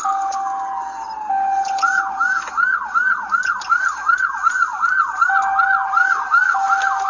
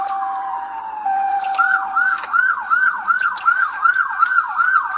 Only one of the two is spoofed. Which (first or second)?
second